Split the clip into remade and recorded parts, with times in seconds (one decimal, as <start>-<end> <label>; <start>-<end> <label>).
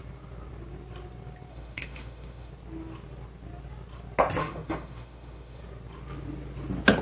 0.0-1.5 recorded; 1.5-2.5 remade; 2.5-4.4 recorded; 4.4-5.6 remade; 5.6-7.0 recorded